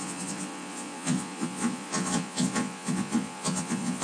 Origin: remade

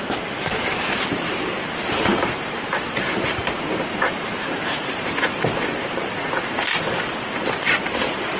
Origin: remade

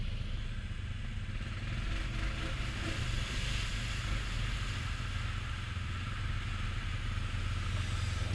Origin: recorded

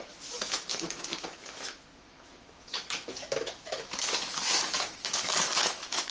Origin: remade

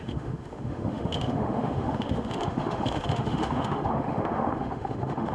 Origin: remade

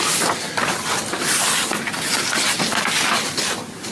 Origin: remade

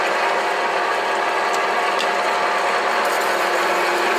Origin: recorded